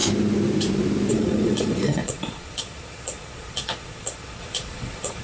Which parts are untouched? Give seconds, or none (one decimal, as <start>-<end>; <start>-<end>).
0.0-1.1